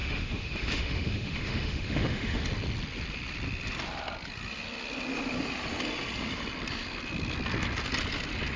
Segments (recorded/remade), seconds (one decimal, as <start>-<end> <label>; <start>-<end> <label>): 0.0-2.5 remade; 2.5-8.6 recorded